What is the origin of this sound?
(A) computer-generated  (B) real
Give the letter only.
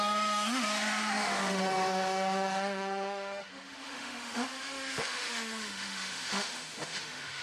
A